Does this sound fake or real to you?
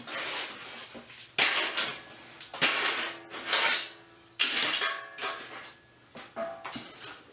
real